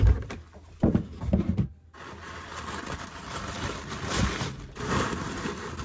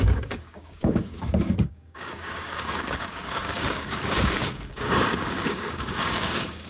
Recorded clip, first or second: first